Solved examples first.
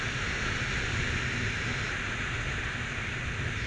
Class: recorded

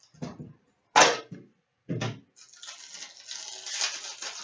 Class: recorded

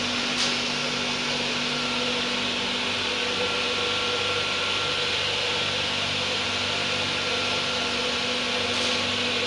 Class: recorded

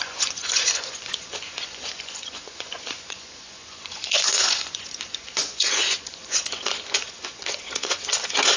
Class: remade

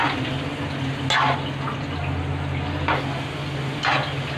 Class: recorded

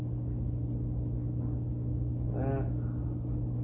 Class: recorded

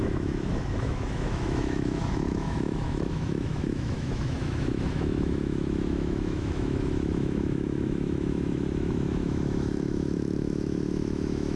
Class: remade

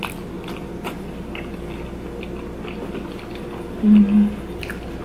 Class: recorded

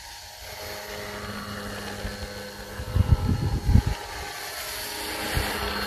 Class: recorded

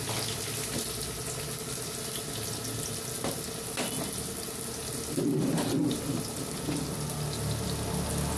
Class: recorded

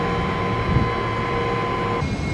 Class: recorded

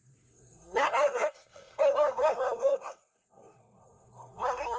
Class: remade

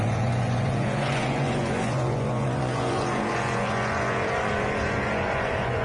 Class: remade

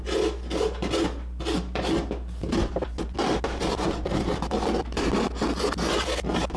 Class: recorded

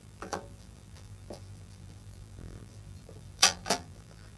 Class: remade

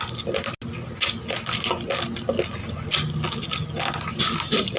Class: recorded